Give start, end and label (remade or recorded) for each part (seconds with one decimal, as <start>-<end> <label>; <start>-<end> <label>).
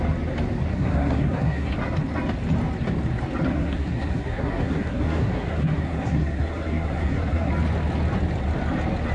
0.0-0.7 recorded; 0.7-1.7 remade; 1.7-3.5 recorded; 3.5-7.5 remade; 7.5-9.1 recorded